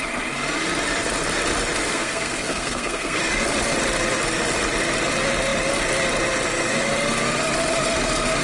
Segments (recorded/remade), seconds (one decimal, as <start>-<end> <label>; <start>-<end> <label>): 0.0-1.9 recorded; 1.9-3.2 remade; 3.2-8.4 recorded